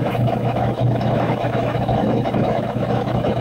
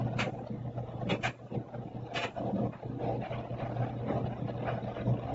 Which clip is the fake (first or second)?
first